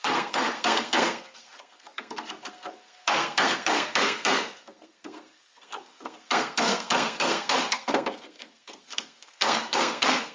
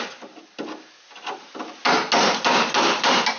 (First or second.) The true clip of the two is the second